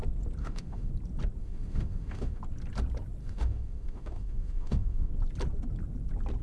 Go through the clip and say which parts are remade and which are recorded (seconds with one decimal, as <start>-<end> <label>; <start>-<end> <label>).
0.0-0.4 recorded; 0.4-0.9 remade; 0.9-1.4 recorded; 1.4-2.4 remade; 2.4-3.2 recorded; 3.2-5.1 remade; 5.1-6.4 recorded